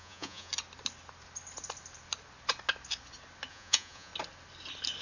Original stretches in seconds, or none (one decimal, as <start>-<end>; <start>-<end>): 0.5-3.5; 4.1-5.0